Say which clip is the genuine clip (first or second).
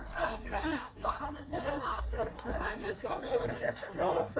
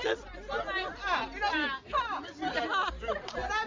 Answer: second